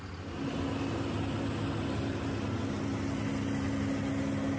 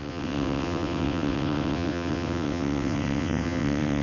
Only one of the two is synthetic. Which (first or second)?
second